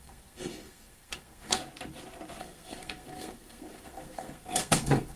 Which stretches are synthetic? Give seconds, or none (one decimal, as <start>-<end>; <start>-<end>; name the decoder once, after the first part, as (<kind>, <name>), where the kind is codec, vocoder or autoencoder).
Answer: 0.0-1.6 (codec, SNAC); 2.4-5.2